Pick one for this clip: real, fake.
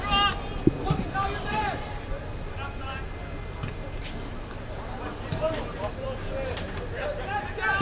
real